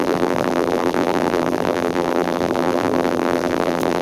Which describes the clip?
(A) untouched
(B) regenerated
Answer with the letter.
B